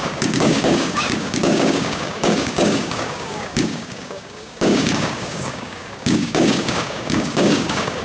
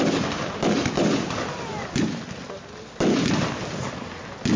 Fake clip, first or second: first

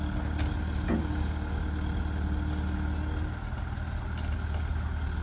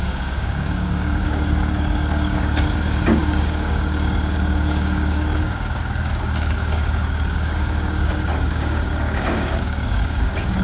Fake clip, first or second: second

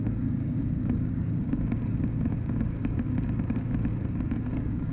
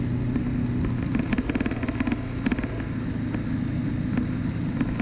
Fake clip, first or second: first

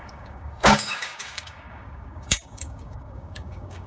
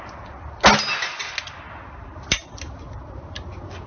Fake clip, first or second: first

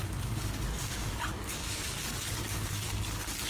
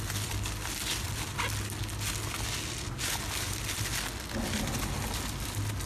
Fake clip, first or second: first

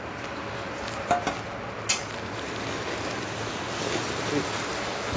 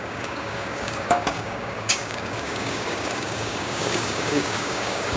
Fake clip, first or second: second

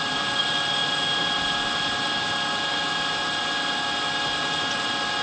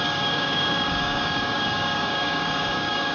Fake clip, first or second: second